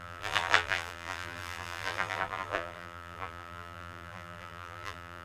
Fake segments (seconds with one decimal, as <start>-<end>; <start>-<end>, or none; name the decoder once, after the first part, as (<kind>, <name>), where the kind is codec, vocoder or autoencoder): 0.0-5.2 (vocoder, BigVGAN v2)